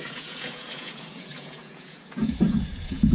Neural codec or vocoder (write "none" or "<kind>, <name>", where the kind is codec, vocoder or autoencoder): vocoder, Vocos